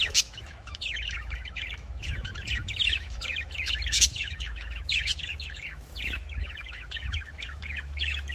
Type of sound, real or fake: fake